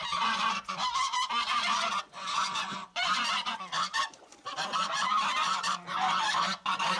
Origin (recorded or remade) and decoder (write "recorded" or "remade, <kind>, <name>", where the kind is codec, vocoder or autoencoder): remade, vocoder, Vocos